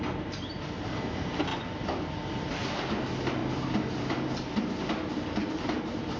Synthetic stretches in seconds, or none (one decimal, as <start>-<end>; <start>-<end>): 3.4-5.8